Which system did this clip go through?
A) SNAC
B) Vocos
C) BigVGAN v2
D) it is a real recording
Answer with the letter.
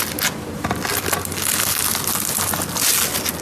D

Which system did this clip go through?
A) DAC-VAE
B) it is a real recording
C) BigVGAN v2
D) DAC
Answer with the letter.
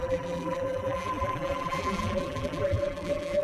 C